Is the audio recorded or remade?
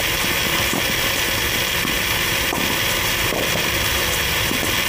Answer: remade